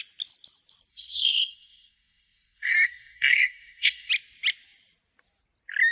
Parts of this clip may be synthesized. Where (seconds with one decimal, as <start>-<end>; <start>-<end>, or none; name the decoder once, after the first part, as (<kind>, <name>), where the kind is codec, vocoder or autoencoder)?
0.9-4.1 (codec, SNAC)